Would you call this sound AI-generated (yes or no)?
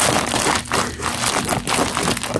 no